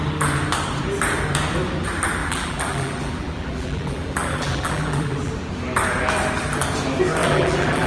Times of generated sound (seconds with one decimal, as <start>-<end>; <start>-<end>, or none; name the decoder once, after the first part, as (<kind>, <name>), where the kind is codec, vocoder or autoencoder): 2.2-5.3 (vocoder, BigVGAN v2); 7.2-7.9